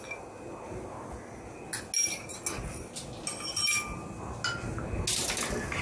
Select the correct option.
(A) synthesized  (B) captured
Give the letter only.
B